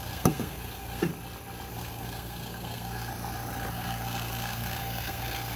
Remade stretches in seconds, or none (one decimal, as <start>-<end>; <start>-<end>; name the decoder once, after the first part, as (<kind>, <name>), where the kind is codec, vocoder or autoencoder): 0.0-1.1 (codec, SNAC); 1.7-3.1; 3.7-5.6